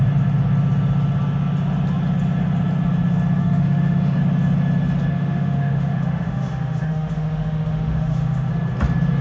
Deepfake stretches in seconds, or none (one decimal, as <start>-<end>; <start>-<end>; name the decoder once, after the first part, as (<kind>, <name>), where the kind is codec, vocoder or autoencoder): 3.4-4.2 (autoencoder, DAC-VAE); 5.1-8.5